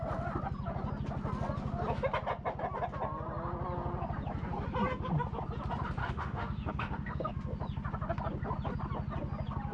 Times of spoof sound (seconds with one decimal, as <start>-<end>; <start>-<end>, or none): 6.0-7.3